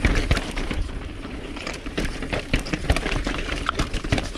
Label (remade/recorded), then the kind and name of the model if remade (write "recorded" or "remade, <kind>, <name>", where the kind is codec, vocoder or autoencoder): remade, vocoder, BigVGAN v2